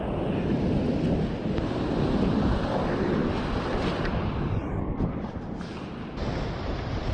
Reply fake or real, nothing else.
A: real